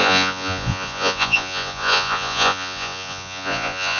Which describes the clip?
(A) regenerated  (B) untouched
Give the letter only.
A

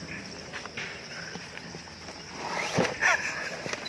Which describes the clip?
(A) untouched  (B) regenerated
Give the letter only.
A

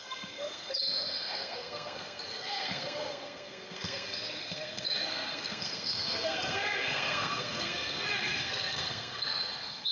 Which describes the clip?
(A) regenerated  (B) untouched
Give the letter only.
A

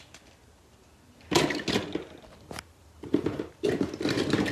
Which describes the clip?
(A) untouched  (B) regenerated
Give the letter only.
A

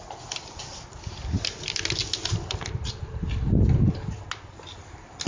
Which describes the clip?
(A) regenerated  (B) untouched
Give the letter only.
B